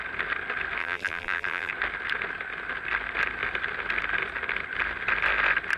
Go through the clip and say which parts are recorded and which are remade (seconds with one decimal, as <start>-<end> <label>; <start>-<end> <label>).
0.0-0.8 recorded; 0.8-1.7 remade; 1.7-5.8 recorded